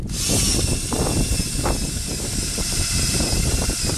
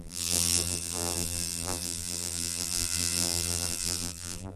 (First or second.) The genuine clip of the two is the first